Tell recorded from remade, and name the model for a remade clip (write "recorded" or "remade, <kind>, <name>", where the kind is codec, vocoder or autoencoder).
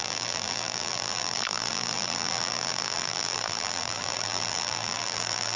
remade, vocoder, BigVGAN v2